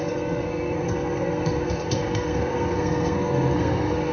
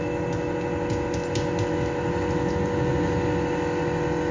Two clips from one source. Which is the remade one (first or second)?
first